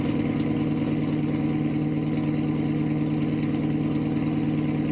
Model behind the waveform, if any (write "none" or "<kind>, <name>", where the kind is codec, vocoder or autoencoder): none